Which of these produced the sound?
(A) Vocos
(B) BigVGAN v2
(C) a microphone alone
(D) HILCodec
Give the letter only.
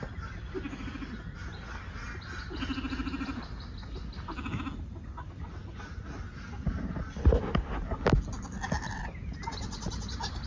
C